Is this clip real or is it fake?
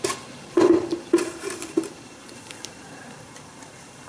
fake